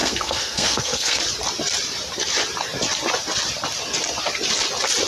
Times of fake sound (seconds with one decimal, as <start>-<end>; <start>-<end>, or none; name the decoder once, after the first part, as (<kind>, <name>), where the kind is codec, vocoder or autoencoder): 0.0-1.2 (codec, SNAC)